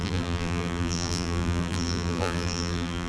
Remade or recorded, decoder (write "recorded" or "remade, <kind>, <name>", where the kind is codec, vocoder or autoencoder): remade, vocoder, BigVGAN v2